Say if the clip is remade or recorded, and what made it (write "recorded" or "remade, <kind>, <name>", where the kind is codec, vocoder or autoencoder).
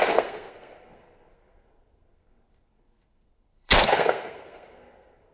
remade, codec, SNAC